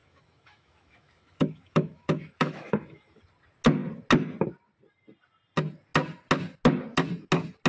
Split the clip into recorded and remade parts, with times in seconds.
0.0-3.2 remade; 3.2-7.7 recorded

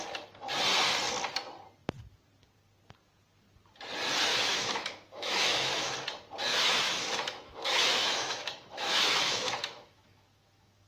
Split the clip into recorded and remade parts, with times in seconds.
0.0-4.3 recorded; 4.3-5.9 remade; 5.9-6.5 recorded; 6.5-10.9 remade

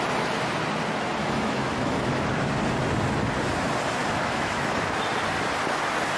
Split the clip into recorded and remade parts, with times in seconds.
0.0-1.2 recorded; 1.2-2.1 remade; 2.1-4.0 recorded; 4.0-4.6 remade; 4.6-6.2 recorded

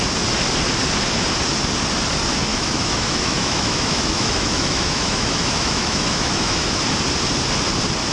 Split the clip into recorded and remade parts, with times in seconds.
0.0-2.5 recorded; 2.5-6.8 remade; 6.8-8.1 recorded

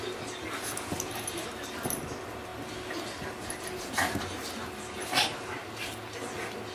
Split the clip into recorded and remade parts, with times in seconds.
0.0-6.7 recorded

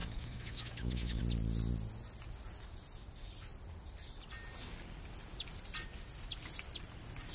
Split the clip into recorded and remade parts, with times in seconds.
0.0-1.2 remade; 1.2-7.3 recorded

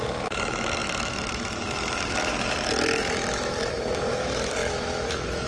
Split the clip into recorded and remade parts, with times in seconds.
0.0-5.5 remade

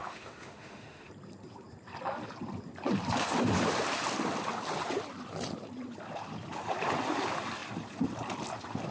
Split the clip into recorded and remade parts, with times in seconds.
0.0-1.1 remade; 1.1-8.9 recorded